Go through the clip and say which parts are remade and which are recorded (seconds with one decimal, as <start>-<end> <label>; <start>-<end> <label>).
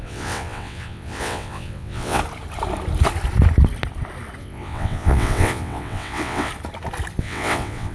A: 0.0-2.2 remade; 2.2-4.4 recorded; 4.4-6.5 remade; 6.5-7.2 recorded; 7.2-7.9 remade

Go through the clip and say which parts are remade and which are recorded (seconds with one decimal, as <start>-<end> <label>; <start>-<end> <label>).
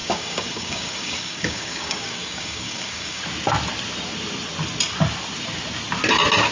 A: 0.0-3.2 remade; 3.2-6.5 recorded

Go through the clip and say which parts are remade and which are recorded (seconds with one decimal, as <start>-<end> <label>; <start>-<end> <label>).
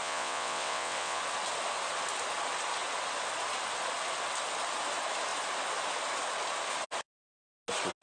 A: 0.0-1.2 remade; 1.2-8.0 recorded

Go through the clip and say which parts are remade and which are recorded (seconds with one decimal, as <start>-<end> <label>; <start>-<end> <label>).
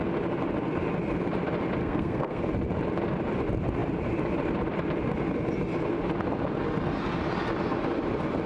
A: 0.0-1.8 recorded; 1.8-2.4 remade; 2.4-8.5 recorded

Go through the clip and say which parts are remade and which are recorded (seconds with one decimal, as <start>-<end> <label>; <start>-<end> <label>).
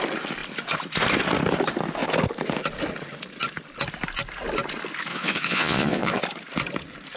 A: 0.0-5.1 recorded; 5.1-6.2 remade; 6.2-7.2 recorded